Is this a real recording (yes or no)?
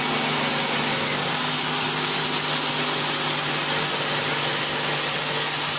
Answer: yes